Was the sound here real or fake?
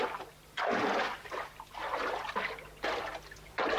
real